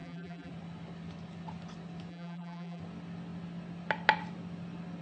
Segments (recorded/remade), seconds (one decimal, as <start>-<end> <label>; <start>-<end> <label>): 0.0-0.5 remade; 0.5-2.1 recorded; 2.1-2.8 remade; 2.8-5.0 recorded